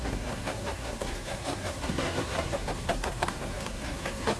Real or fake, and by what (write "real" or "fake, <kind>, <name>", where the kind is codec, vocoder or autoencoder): fake, codec, SNAC